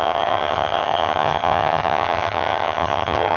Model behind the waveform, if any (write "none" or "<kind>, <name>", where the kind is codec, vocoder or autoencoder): vocoder, HiFi-GAN